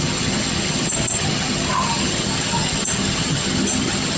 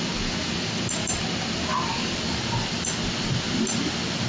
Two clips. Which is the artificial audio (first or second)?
first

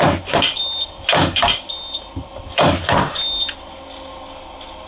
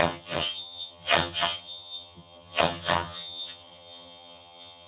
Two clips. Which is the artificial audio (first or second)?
second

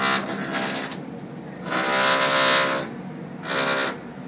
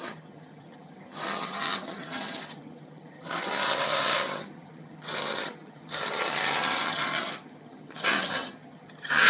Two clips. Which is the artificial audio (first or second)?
second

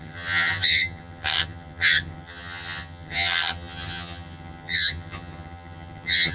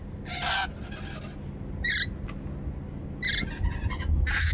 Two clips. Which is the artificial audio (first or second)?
first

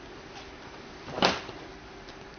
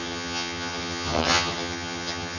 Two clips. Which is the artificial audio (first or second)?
second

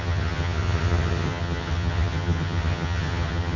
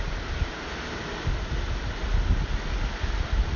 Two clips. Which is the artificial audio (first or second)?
first